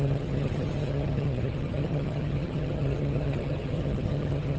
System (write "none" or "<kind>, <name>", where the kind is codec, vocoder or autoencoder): vocoder, HiFi-GAN